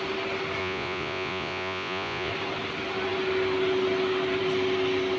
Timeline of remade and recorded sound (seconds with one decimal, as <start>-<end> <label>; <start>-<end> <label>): 0.0-0.6 recorded; 0.6-2.3 remade; 2.3-5.2 recorded